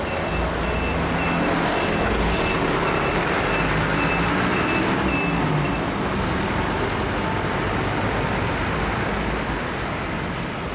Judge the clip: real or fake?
real